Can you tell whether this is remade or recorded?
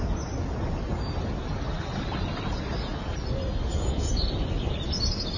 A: recorded